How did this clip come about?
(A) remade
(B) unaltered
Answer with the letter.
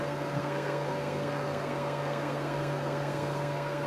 A